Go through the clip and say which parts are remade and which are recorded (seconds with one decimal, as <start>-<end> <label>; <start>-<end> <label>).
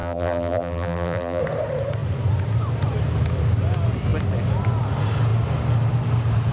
0.0-1.4 remade; 1.4-6.5 recorded